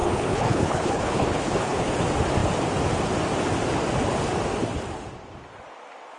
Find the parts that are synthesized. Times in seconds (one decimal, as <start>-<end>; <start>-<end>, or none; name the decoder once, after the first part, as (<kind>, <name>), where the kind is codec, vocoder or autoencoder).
0.0-1.9 (codec, HILCodec)